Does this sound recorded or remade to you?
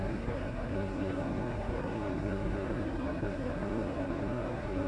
remade